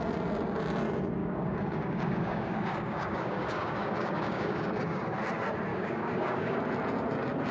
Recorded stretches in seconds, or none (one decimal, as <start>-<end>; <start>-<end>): 0.0-1.2; 5.0-5.7; 6.6-7.5